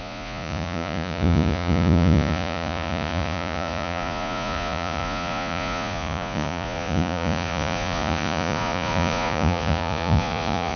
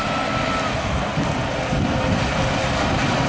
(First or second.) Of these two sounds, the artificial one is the first